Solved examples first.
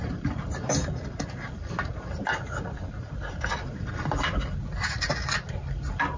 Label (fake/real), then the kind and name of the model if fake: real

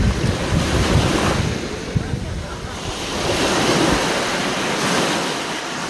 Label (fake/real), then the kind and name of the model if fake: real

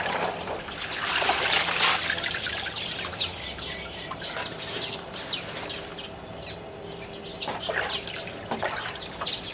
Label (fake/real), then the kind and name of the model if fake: real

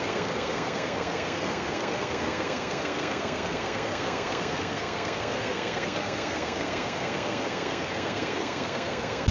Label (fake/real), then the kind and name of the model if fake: fake, codec, SNAC